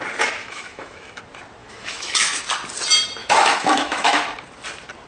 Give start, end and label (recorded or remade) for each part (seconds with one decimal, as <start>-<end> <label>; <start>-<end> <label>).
0.0-0.4 recorded; 0.4-1.2 remade; 1.2-1.6 recorded; 1.6-2.4 remade; 2.4-3.2 recorded; 3.2-4.3 remade; 4.3-5.1 recorded